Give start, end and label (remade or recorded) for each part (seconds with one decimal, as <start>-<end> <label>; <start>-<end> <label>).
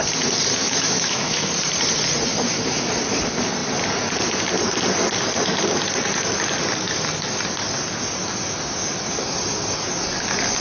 0.0-0.6 recorded; 0.6-1.5 remade; 1.5-10.6 recorded